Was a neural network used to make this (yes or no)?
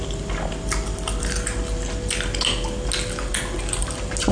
no